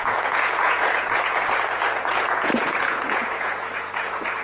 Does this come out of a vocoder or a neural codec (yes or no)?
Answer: yes